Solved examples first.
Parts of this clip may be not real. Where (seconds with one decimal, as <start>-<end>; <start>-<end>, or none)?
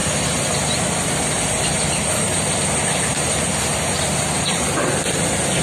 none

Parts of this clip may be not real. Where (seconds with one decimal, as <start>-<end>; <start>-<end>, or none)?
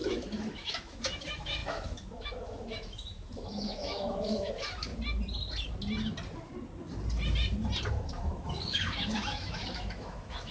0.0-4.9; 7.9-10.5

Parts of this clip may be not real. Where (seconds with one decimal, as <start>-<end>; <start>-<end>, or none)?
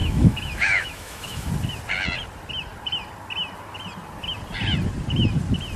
0.0-1.5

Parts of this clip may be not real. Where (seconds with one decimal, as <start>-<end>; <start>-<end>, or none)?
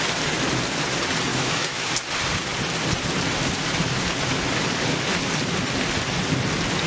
1.3-1.9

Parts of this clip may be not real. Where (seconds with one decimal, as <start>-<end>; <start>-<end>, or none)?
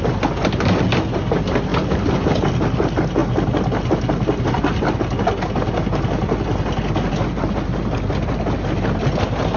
none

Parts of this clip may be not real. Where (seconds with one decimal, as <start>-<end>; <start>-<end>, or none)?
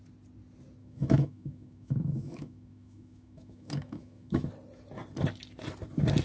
0.8-4.5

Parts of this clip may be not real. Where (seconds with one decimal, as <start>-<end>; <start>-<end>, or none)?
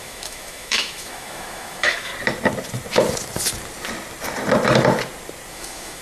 0.0-2.1; 5.5-6.0